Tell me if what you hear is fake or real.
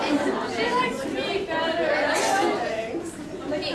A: real